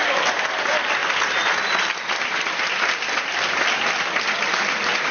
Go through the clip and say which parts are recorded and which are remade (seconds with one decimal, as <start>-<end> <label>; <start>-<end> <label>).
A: 0.0-5.1 recorded